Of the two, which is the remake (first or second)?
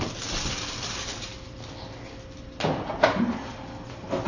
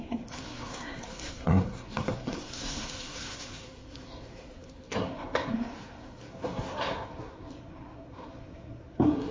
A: second